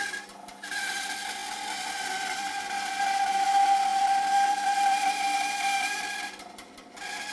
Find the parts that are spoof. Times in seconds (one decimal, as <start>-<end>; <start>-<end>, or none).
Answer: 1.4-2.9; 3.9-5.1